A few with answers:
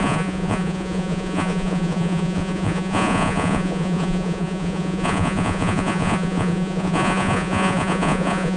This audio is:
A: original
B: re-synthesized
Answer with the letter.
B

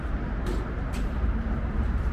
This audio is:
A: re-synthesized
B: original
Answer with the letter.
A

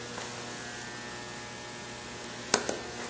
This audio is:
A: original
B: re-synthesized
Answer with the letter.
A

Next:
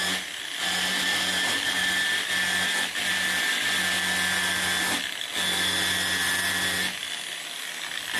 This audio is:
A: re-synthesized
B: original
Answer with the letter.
B